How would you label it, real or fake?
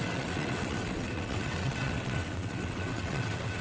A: fake